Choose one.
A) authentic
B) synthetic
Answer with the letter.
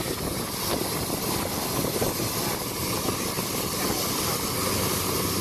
A